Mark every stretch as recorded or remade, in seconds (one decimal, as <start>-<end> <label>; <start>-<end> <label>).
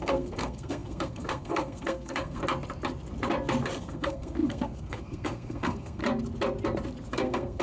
0.0-2.4 remade; 2.4-3.8 recorded; 3.8-6.0 remade; 6.0-7.1 recorded; 7.1-7.6 remade